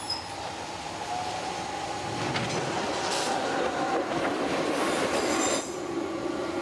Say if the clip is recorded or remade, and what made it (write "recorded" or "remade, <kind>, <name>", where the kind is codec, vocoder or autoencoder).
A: recorded